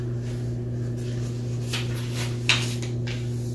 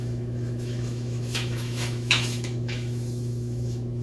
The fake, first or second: second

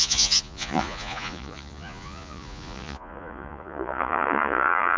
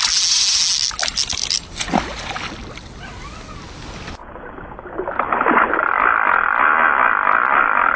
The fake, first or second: first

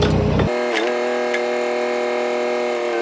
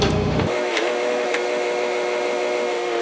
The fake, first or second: second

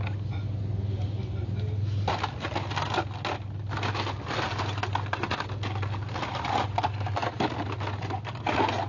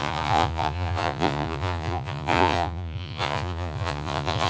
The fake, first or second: second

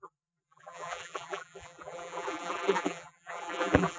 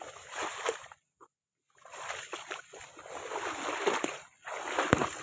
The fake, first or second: first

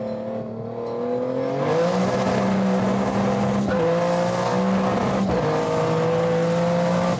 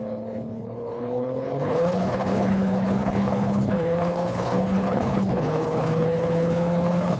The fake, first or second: second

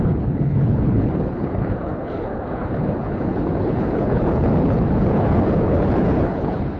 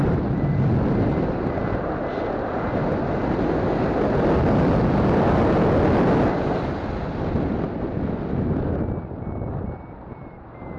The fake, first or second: first